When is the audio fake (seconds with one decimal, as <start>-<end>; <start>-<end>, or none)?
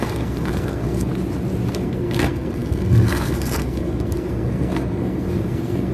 0.0-1.1; 1.7-5.9